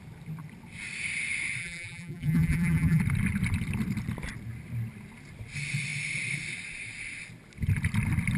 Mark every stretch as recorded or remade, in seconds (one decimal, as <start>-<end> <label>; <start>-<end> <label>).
0.0-1.6 recorded; 1.6-3.0 remade; 3.0-8.4 recorded